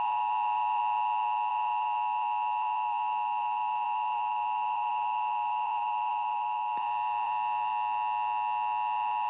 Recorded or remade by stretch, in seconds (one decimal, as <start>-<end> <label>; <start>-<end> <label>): 0.0-0.8 remade; 0.8-1.5 recorded; 1.5-7.7 remade; 7.7-9.3 recorded